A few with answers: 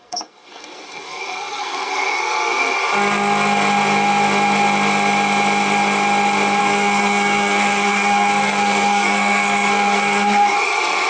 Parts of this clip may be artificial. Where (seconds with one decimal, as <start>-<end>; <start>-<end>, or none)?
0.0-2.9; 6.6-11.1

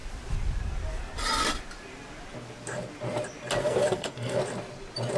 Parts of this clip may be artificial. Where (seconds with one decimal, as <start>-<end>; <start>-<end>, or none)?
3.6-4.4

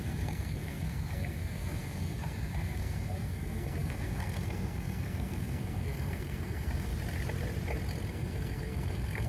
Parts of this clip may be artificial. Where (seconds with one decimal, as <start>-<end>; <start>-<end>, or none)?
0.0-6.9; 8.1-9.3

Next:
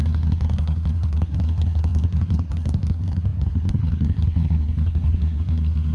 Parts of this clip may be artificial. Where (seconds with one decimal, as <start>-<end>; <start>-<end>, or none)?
0.0-5.9

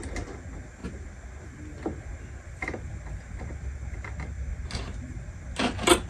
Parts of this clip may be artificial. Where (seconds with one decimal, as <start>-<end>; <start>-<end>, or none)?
none

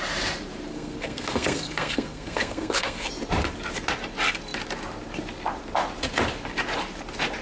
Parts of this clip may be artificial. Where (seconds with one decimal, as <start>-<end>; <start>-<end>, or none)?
0.7-3.1

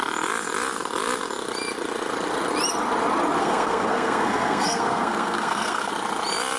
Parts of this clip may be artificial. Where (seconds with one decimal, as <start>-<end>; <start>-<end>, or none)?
3.4-5.9

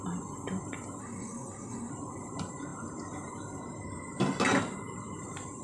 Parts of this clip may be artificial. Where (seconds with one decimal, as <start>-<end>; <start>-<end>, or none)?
1.0-1.9